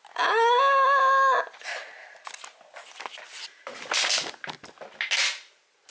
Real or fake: real